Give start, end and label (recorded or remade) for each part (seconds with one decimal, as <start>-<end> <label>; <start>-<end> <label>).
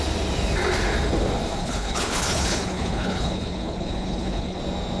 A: 0.0-1.6 recorded; 1.6-4.6 remade; 4.6-5.0 recorded